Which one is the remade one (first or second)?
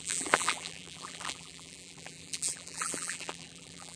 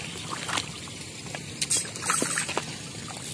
first